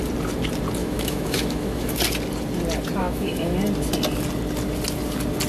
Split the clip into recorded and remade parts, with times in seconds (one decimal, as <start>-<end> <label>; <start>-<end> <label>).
0.0-0.8 recorded; 0.8-2.0 remade; 2.0-3.0 recorded; 3.0-3.5 remade; 3.5-5.5 recorded